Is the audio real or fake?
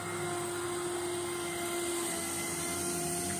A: real